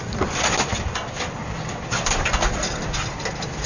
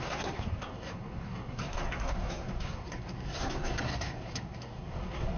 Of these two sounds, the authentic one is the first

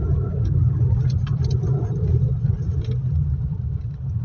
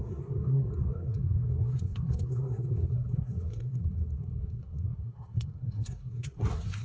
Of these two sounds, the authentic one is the first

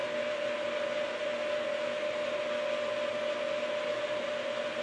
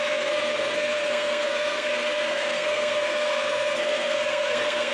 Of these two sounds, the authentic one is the first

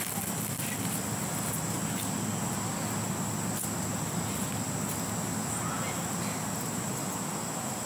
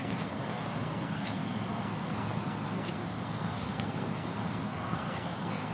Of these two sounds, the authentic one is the first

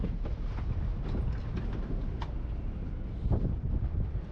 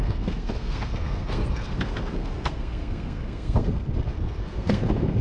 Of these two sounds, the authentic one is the first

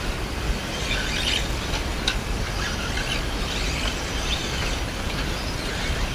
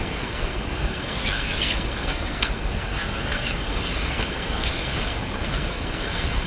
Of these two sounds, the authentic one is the first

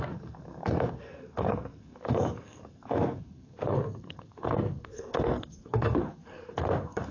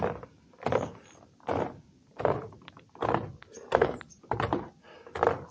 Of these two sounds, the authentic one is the second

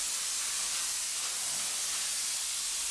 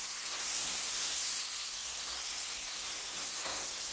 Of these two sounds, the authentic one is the first